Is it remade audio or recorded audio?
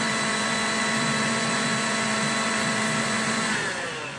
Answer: remade